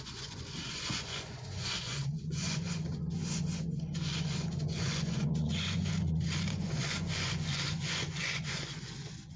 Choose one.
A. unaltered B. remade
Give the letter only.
B